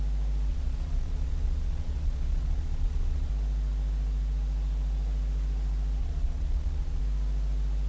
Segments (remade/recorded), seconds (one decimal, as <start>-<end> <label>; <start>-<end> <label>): 0.0-0.5 recorded; 0.5-3.3 remade; 3.3-6.0 recorded; 6.0-7.0 remade; 7.0-7.9 recorded